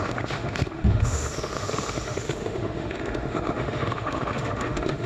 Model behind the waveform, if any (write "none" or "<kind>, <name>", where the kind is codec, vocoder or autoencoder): autoencoder, DAC-VAE